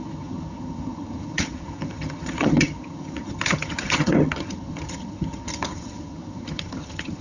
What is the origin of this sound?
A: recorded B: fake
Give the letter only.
B